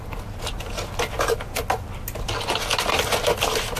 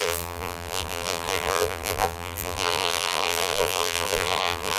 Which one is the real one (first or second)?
first